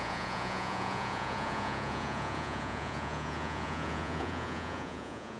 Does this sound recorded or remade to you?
remade